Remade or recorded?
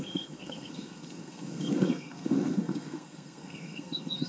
remade